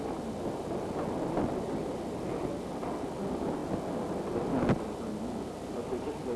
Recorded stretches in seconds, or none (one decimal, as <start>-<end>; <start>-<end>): 0.0-6.4

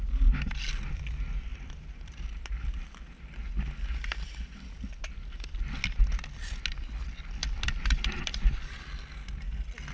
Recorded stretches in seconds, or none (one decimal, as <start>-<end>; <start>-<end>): 0.0-1.5; 2.4-7.4; 8.8-9.9

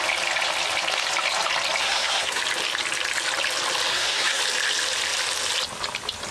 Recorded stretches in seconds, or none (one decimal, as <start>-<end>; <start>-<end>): 0.0-1.8; 2.4-3.9; 4.4-6.3

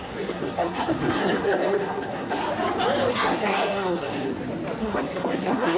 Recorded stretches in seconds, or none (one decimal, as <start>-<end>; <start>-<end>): 2.4-3.1; 4.3-4.8

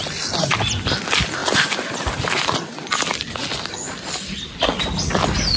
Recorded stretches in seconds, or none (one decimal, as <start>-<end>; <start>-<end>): 0.0-5.6

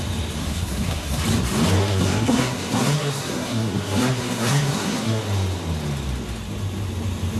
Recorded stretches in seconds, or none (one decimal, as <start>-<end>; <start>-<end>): 0.0-0.4; 1.2-1.8; 5.2-7.4

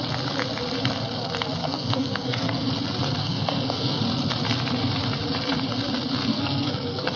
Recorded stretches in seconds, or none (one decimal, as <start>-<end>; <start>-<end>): 0.0-1.6; 2.7-3.2; 4.0-6.3

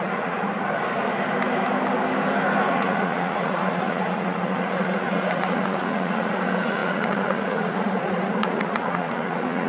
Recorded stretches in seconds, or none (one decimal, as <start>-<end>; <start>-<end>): 0.5-2.7